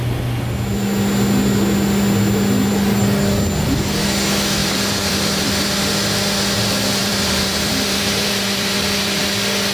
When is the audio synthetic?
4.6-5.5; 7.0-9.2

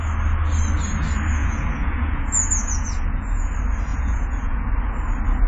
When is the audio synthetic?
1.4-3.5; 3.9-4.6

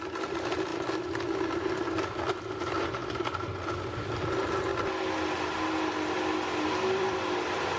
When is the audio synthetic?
0.0-3.0; 3.8-4.7; 6.5-7.8

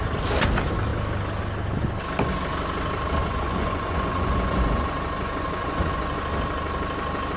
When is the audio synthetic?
3.2-6.2

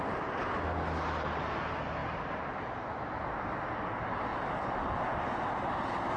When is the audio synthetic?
none

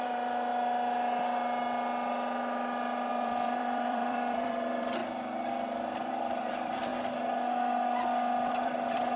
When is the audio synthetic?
0.0-0.5; 3.1-5.0; 6.0-6.9; 8.5-9.2

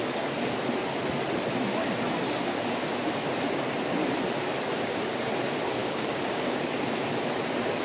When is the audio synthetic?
5.8-6.6